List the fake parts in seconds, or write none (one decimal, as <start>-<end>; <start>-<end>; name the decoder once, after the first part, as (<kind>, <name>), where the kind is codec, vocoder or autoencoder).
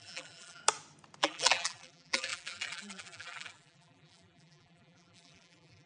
0.0-0.6 (vocoder, BigVGAN v2); 1.2-5.9